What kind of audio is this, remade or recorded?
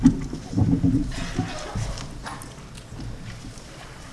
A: recorded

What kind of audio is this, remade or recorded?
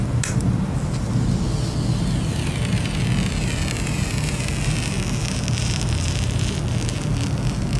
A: recorded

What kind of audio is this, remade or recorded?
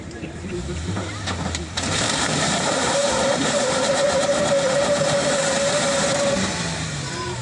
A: remade